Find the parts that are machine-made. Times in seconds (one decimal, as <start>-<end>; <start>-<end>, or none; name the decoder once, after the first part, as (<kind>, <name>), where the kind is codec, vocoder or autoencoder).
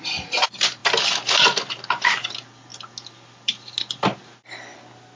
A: none